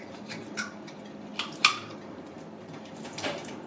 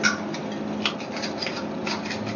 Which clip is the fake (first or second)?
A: first